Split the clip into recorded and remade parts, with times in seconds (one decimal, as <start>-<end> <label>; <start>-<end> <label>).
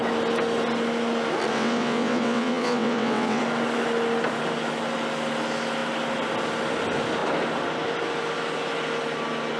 0.0-1.5 recorded; 1.5-3.4 remade; 3.4-9.6 recorded